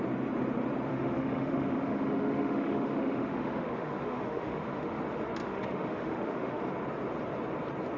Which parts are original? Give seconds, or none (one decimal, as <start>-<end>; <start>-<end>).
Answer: 0.0-0.9; 5.0-5.4; 6.6-8.0